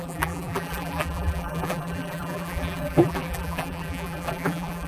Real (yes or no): no